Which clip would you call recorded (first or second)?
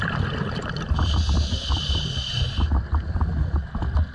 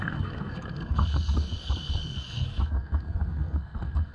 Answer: first